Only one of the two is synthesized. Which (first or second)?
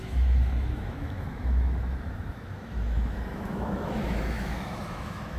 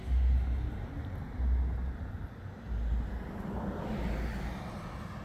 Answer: first